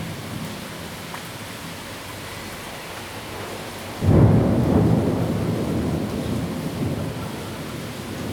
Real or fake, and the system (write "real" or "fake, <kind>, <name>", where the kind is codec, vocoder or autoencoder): real